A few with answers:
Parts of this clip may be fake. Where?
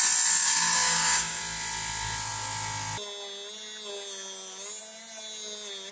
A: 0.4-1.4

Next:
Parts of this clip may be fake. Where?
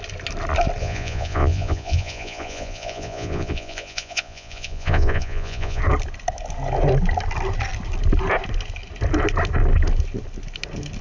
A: 0.8-5.8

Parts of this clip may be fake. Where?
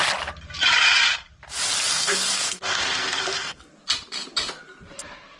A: 1.9-3.6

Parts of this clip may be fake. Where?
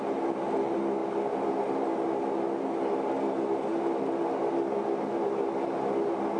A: none